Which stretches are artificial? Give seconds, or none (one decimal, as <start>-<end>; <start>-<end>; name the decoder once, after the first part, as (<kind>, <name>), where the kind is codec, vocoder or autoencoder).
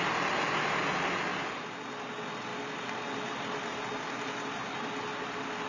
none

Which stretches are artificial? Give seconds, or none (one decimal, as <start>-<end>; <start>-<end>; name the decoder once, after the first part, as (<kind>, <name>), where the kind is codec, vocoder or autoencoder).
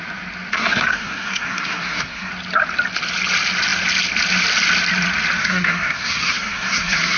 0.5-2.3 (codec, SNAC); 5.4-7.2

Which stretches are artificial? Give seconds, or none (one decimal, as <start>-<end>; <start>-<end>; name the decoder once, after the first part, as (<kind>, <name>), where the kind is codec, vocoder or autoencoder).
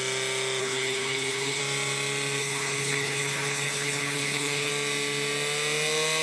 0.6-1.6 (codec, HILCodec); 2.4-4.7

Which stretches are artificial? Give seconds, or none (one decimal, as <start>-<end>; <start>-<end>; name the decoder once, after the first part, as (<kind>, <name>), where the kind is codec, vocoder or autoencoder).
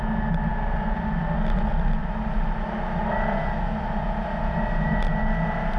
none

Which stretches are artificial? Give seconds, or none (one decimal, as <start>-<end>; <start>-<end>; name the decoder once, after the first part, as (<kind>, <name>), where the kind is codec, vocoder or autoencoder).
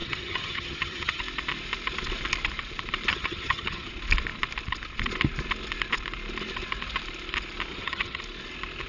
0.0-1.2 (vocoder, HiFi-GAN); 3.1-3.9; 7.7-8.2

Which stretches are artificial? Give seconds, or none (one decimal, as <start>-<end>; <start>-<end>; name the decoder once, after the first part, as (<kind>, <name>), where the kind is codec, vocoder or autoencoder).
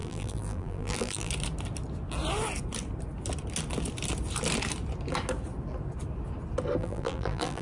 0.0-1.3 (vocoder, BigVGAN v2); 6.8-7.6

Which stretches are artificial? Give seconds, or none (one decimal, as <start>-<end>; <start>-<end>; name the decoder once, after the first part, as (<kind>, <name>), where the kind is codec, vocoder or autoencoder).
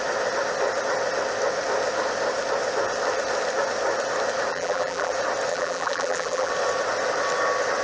4.5-5.1 (vocoder, BigVGAN v2); 5.5-6.5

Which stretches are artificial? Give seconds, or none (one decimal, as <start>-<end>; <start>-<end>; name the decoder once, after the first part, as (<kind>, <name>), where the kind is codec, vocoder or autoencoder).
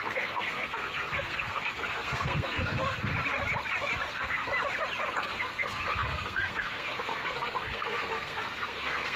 0.0-3.1 (codec, SNAC); 4.1-4.5; 5.2-9.2